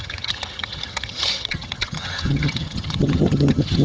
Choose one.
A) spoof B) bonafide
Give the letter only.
A